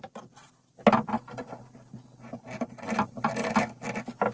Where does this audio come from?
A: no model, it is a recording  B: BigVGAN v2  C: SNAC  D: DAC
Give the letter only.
A